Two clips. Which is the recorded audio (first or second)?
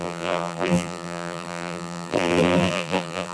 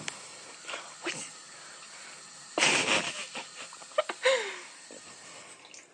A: second